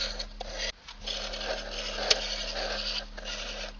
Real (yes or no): yes